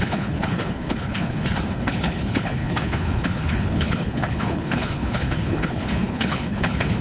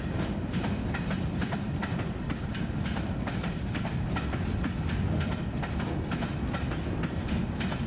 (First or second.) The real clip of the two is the second